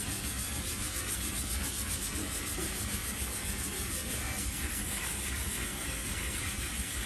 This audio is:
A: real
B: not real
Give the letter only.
B